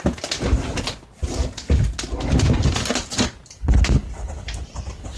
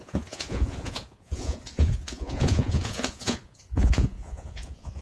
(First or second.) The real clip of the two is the first